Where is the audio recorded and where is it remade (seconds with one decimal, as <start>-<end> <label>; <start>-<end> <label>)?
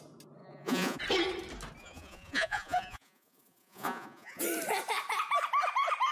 0.0-0.4 recorded; 0.4-1.0 remade; 1.0-1.8 recorded; 1.8-4.4 remade; 4.4-6.1 recorded